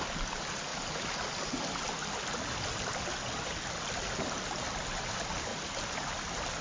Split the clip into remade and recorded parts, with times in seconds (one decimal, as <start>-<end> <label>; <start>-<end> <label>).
0.0-6.6 recorded